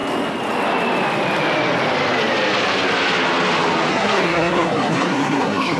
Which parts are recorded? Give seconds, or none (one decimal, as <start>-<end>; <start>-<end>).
0.0-3.9